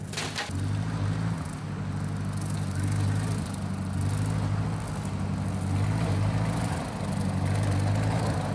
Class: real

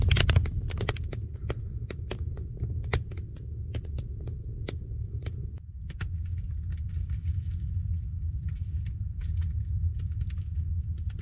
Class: real